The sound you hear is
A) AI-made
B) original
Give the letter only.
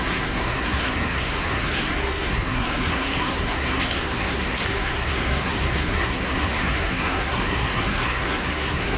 A